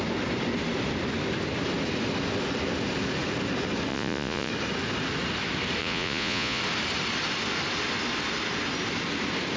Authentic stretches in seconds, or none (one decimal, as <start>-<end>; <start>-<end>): 0.0-3.9; 4.5-5.8; 6.6-9.6